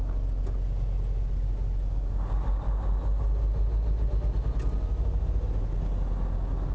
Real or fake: real